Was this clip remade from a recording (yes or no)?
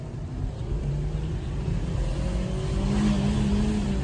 no